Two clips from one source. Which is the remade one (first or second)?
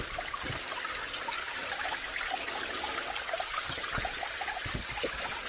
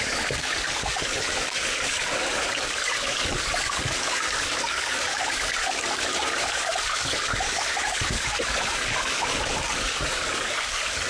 second